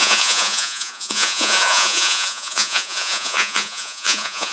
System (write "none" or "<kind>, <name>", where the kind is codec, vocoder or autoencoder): vocoder, Vocos